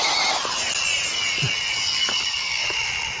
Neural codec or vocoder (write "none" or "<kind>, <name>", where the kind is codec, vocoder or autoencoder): none